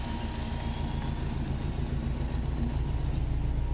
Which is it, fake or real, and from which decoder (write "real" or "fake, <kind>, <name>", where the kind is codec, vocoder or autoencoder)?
real